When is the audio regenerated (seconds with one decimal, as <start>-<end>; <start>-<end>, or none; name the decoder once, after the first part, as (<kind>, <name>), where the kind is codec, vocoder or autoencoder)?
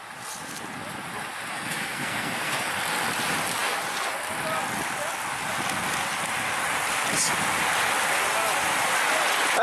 1.5-2.7 (codec, SNAC)